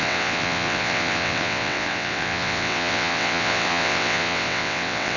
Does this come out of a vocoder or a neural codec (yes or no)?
yes